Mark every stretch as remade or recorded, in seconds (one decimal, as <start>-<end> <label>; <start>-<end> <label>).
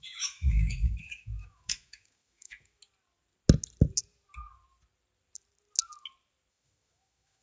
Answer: 0.0-2.8 remade; 2.8-6.5 recorded; 6.5-7.4 remade